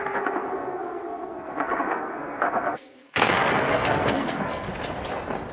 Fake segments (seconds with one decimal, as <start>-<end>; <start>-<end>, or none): 0.0-4.7

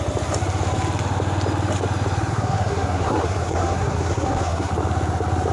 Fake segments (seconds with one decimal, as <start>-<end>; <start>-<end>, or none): 2.3-4.7

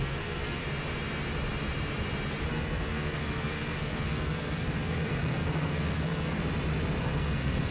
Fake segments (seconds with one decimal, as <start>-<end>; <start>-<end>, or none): 0.0-0.6; 2.5-6.4; 7.0-7.7